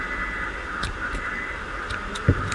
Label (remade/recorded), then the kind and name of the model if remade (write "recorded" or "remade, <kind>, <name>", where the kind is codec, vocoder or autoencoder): recorded